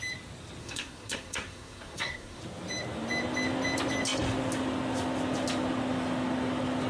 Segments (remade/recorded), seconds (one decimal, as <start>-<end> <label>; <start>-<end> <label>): 0.0-0.6 recorded; 0.6-2.4 remade; 2.4-6.9 recorded